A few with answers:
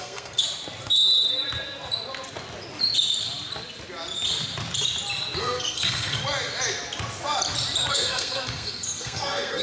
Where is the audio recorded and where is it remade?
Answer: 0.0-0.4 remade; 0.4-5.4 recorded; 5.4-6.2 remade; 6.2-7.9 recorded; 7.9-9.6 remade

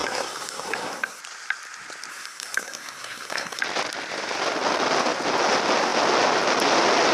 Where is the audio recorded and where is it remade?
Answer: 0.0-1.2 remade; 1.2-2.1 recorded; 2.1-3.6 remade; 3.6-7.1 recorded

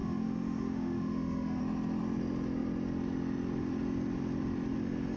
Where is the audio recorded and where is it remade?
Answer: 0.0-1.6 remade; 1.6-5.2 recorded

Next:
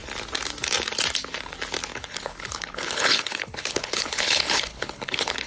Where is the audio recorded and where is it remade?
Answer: 0.0-1.9 recorded; 1.9-5.5 remade

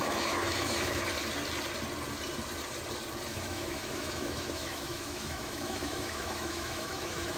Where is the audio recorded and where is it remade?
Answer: 0.0-1.0 remade; 1.0-3.3 recorded; 3.3-7.4 remade

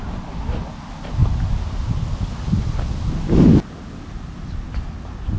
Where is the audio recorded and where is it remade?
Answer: 0.0-5.4 recorded